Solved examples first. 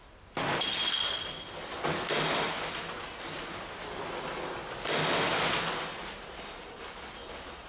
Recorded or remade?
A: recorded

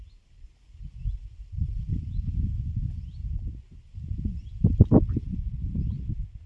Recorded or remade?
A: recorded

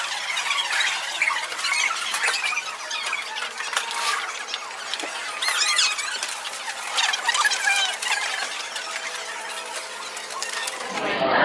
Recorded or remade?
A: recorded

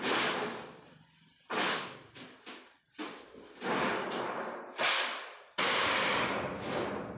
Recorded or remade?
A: remade